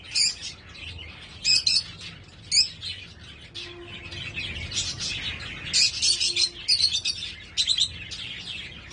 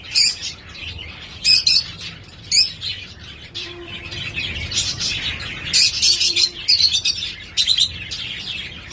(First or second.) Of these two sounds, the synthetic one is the second